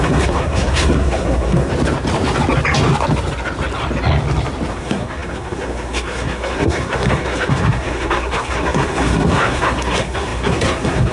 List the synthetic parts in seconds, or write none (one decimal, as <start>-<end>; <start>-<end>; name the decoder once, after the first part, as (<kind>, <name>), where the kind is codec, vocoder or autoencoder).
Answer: 0.0-1.7 (codec, SNAC); 4.7-11.1